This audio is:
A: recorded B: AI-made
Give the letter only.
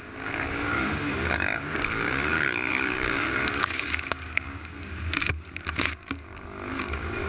B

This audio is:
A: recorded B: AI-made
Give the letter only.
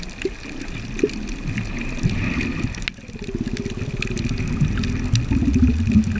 A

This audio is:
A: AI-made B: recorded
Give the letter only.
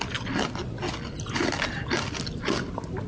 B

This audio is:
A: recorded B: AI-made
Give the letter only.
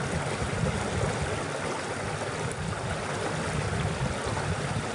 A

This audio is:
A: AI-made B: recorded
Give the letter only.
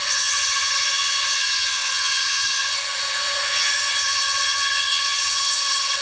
A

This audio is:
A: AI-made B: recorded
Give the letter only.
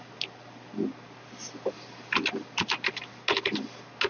B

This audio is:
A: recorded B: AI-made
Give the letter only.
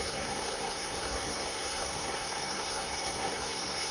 B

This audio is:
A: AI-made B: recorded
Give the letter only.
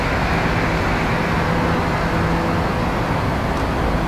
B